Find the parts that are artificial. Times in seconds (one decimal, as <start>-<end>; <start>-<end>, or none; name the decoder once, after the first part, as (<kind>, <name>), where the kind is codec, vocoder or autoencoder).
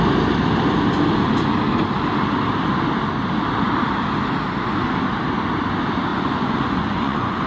6.1-7.5 (vocoder, Vocos)